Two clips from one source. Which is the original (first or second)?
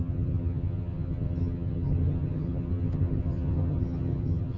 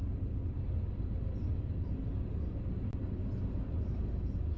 second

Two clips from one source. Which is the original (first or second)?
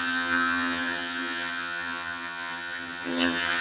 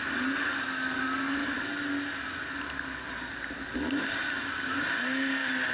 second